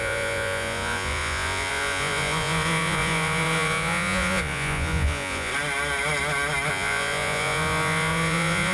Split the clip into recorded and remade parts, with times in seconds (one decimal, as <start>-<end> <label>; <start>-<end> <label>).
0.0-5.5 remade; 5.5-6.7 recorded; 6.7-8.7 remade